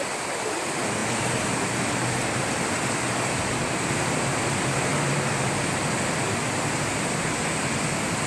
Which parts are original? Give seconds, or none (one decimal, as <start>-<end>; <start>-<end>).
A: 0.0-8.3

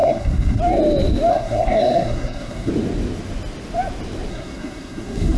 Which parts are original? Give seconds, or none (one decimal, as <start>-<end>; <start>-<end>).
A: 0.6-1.3; 2.7-4.3

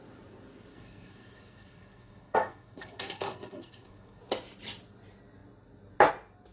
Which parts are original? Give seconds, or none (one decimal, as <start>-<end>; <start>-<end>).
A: 0.0-0.7; 4.2-6.5